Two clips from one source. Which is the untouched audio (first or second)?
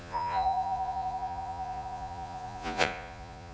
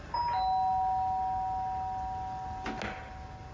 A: second